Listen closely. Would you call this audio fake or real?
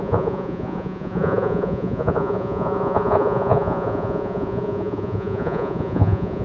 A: fake